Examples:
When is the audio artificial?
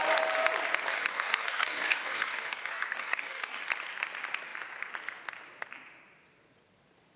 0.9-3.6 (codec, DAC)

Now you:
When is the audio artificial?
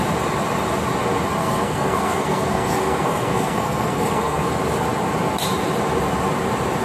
1.4-4.5 (codec, SNAC)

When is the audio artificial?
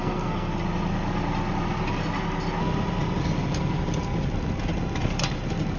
0.0-0.5 (codec, SNAC)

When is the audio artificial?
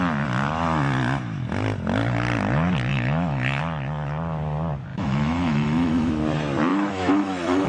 2.9-3.6 (autoencoder, DAC-VAE); 4.9-6.1; 6.7-7.7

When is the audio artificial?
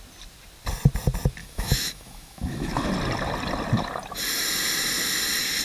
1.4-2.9 (autoencoder, DAC-VAE)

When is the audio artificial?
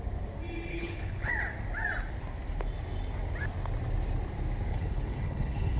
0.7-1.3 (codec, HILCodec); 4.7-5.8